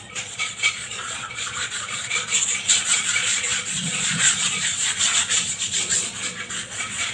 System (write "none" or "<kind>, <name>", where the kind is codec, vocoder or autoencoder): vocoder, Vocos